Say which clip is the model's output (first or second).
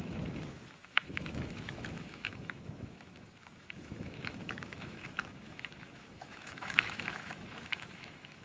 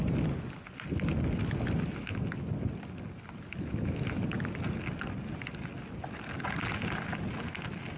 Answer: first